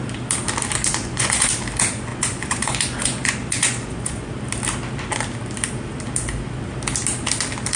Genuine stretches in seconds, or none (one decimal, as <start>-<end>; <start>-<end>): 0.0-0.9; 1.5-2.1; 4.3-7.8

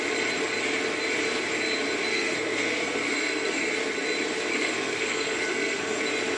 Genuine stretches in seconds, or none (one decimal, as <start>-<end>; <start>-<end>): 0.0-2.1; 3.7-4.5; 6.0-6.4

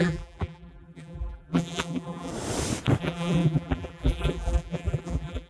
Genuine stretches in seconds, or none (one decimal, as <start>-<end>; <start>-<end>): 2.3-3.0

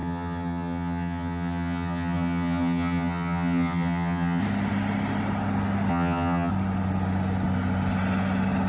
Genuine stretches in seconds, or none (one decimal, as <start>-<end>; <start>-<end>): 4.4-5.9; 6.5-8.7

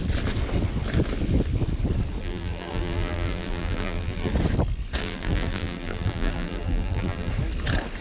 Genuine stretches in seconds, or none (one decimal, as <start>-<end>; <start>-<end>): 0.0-2.2; 4.3-5.0; 7.3-8.0

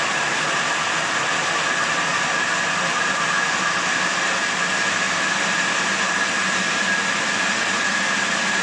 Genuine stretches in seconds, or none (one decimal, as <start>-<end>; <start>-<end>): 0.0-8.6